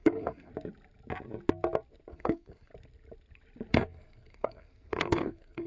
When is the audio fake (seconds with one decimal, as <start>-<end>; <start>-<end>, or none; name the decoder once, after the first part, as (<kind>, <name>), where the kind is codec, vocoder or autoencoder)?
0.0-0.5 (codec, SNAC); 2.1-2.7; 3.7-5.7